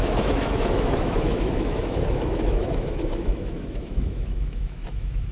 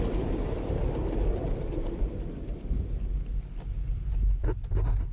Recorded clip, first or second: second